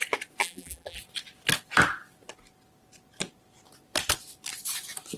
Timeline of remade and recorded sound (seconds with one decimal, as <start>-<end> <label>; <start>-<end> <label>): 0.0-0.4 recorded; 0.4-1.0 remade; 1.0-5.2 recorded